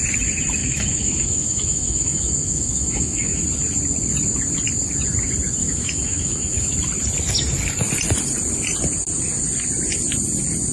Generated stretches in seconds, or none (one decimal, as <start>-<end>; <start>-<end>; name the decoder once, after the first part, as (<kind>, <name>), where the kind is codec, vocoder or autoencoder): 0.6-3.4 (autoencoder, DAC-VAE); 5.6-6.7